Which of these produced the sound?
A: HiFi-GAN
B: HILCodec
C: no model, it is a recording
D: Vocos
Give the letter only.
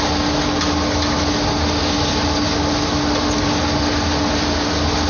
C